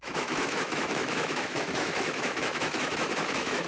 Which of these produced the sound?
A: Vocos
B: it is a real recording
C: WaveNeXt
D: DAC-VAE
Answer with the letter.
D